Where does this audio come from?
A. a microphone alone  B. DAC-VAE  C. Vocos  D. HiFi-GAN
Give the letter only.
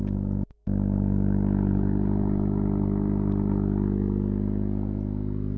A